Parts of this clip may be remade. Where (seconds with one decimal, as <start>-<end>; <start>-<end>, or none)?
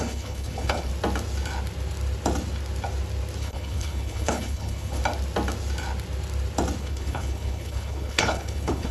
0.0-0.9; 3.4-5.0; 6.8-8.9